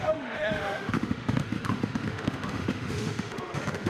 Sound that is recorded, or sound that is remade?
remade